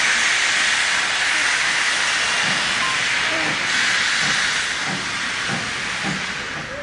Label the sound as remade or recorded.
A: recorded